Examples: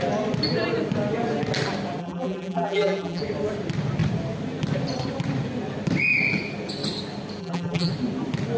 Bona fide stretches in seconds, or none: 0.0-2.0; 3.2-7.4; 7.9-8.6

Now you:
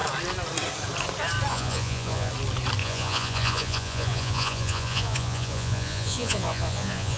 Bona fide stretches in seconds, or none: 0.0-1.5; 2.3-2.8

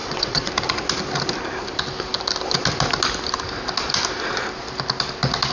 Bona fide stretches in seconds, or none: 0.5-5.5

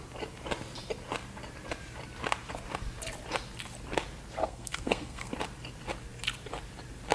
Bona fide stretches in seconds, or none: 0.0-4.4; 5.3-7.1

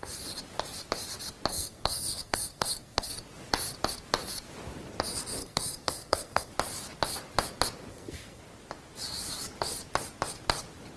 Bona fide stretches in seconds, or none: 0.0-1.5; 3.1-5.4; 6.5-7.9; 8.4-11.0

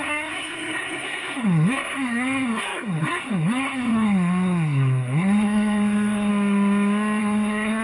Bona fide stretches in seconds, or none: 6.3-7.2

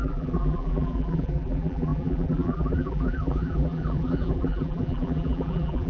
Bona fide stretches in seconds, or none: none